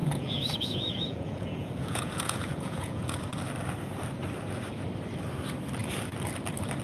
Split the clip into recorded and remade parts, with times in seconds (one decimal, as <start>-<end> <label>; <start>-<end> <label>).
0.0-3.2 remade; 3.2-6.8 recorded